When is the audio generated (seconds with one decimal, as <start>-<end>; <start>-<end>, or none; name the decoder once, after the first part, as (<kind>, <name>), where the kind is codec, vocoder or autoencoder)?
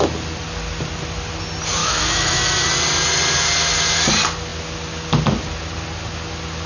1.8-2.4 (autoencoder, DAC-VAE)